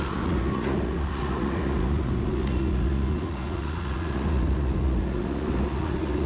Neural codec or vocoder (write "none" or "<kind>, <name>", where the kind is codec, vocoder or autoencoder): vocoder, Vocos